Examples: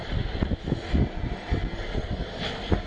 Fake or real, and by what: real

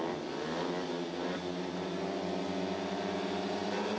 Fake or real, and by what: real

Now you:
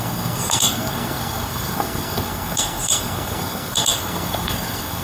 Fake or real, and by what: fake, codec, SNAC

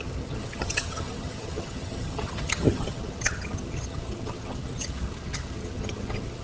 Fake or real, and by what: fake, vocoder, HiFi-GAN